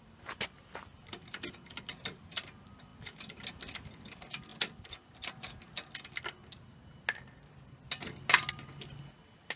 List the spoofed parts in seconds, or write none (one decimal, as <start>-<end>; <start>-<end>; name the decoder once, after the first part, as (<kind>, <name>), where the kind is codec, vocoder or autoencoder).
none